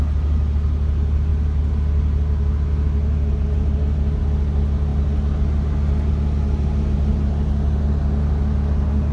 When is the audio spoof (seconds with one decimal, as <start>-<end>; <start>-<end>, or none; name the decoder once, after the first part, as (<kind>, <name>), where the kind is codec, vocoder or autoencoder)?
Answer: none